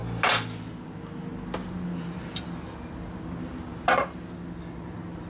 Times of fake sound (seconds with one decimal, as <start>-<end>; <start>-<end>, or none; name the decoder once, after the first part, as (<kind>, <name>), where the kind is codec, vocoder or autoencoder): none